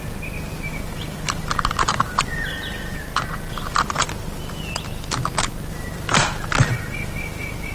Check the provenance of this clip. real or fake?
real